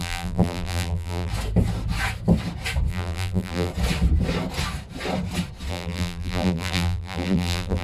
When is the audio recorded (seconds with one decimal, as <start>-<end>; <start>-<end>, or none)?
1.3-2.9; 3.7-5.7